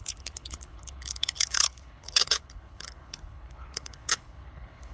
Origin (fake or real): fake